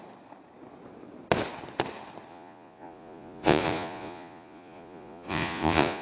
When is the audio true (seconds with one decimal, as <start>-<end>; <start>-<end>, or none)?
0.0-2.3